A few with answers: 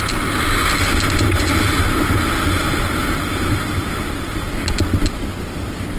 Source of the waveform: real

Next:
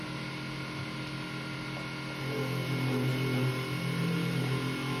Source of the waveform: real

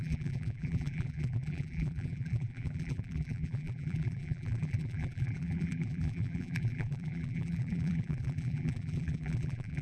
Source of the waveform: fake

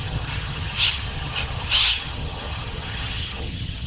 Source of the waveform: fake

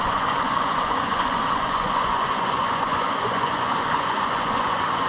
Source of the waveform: fake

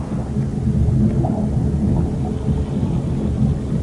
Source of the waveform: real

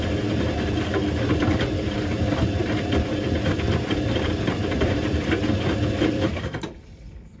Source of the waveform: fake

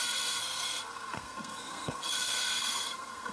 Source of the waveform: fake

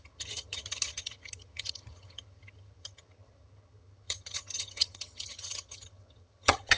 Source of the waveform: fake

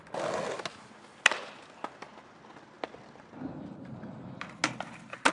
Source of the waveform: real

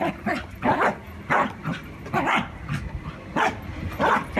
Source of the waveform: fake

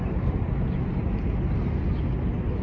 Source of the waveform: real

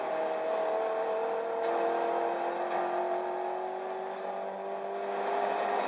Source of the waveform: real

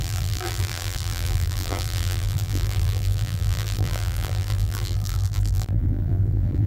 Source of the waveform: fake